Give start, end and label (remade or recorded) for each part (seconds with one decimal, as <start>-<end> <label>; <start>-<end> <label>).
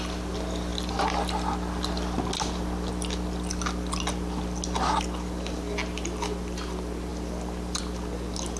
0.0-8.6 recorded